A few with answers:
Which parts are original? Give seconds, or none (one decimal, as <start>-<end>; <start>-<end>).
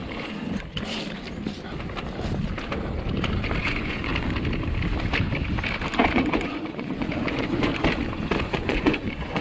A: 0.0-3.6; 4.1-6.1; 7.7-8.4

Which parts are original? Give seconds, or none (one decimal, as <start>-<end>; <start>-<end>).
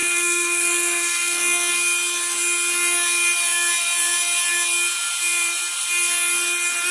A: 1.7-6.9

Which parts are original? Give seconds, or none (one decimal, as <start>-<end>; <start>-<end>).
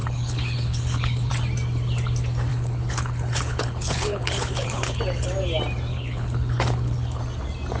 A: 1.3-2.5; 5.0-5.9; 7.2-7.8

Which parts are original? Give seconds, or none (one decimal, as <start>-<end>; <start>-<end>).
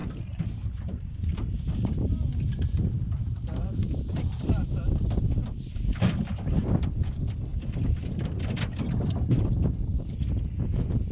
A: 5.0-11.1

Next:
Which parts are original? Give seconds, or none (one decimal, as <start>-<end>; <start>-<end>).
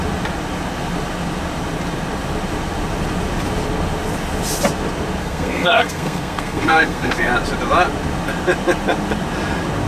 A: 0.0-5.2; 7.3-9.9